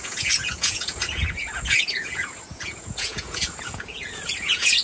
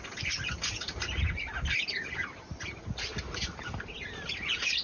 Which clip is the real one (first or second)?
second